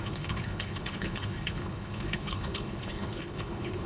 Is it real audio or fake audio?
fake